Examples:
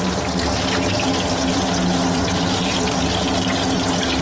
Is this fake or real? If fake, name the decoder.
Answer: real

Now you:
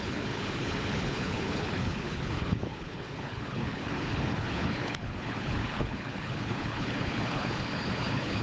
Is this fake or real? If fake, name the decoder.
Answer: fake, codec, HILCodec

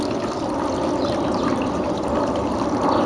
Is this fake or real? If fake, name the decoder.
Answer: real